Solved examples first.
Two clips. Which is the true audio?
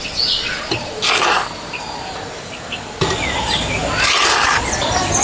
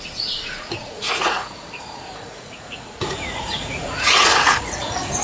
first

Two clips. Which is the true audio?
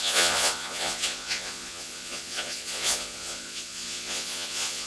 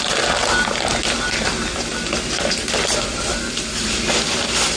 second